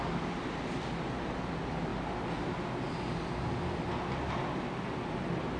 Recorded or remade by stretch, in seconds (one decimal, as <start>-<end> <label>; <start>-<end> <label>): 0.0-5.6 recorded